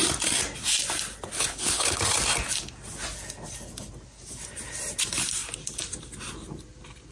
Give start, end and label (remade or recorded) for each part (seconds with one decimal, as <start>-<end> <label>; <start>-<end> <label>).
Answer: 0.0-1.3 recorded; 1.3-2.0 remade; 2.0-7.1 recorded